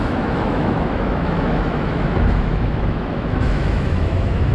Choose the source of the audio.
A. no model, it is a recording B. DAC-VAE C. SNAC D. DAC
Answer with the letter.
B